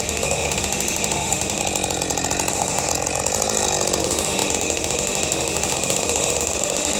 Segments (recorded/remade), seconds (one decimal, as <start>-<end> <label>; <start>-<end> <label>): 0.0-1.6 remade; 1.6-2.5 recorded; 2.5-2.9 remade; 2.9-4.0 recorded; 4.0-7.0 remade